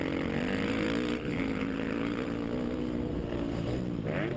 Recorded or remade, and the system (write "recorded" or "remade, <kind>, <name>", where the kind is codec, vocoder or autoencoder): recorded